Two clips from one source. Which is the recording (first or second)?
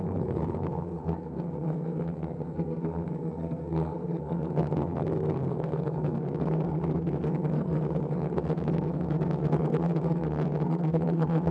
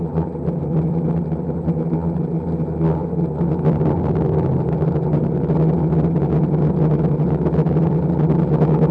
second